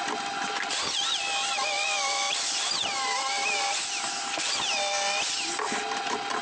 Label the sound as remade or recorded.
recorded